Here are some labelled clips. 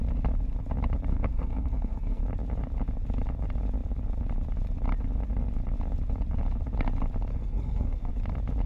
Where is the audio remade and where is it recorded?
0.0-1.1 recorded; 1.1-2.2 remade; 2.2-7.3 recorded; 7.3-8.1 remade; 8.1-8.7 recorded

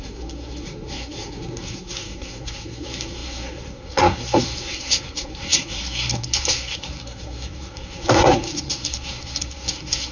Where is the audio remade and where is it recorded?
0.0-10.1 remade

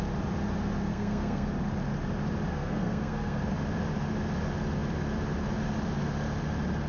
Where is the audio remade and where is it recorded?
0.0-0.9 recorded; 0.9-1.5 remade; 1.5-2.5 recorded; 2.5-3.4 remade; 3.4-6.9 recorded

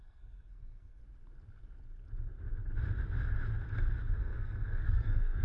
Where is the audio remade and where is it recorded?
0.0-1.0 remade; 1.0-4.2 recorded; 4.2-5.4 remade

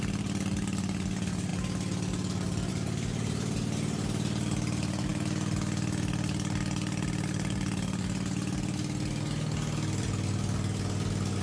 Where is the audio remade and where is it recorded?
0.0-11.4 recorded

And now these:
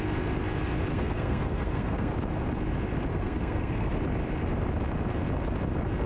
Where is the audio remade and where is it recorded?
0.0-0.9 recorded; 0.9-2.1 remade; 2.1-3.1 recorded; 3.1-4.0 remade; 4.0-6.1 recorded

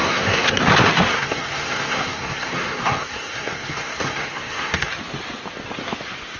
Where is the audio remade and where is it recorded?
0.0-0.6 remade; 0.6-1.1 recorded; 1.1-4.9 remade; 4.9-6.4 recorded